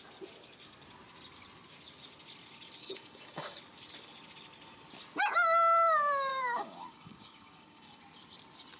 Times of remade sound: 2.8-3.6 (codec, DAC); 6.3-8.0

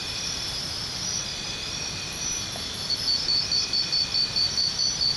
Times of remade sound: none

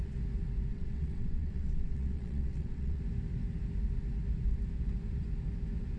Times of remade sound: 0.7-3.0 (vocoder, WaveNeXt)